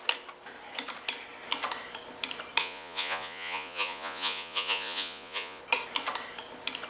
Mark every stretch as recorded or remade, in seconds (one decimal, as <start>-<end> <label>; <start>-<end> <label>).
0.0-2.6 recorded; 2.6-5.6 remade; 5.6-6.9 recorded